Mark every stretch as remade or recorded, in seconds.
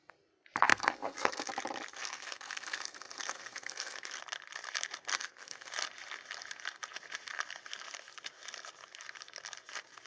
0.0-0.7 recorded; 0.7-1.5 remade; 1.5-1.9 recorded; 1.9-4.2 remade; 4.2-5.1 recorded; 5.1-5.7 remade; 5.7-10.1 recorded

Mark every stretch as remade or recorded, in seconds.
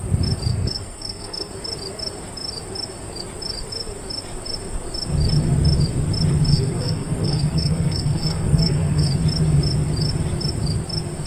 0.0-0.5 recorded; 0.5-1.5 remade; 1.5-6.5 recorded; 6.5-9.1 remade; 9.1-11.3 recorded